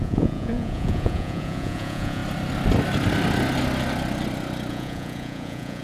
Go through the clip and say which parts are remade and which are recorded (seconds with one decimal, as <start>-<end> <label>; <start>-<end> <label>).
0.0-2.2 remade; 2.2-4.7 recorded; 4.7-5.8 remade